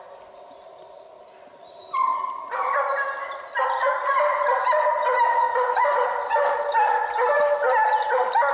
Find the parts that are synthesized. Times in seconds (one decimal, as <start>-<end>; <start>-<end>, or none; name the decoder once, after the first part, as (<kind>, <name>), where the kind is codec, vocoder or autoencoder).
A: 2.1-2.8 (vocoder, BigVGAN v2); 3.2-4.0